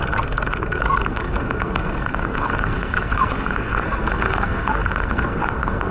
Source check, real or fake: fake